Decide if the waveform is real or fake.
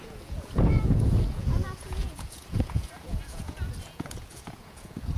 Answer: fake